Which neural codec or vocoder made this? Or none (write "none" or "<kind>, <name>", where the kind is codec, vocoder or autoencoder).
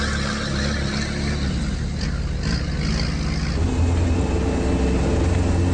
none